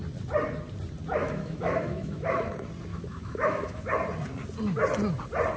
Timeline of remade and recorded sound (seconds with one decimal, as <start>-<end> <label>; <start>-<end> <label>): 0.0-1.2 recorded; 1.2-2.5 remade; 2.5-2.9 recorded; 2.9-3.8 remade; 3.8-5.6 recorded